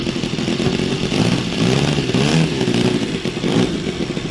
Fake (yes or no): no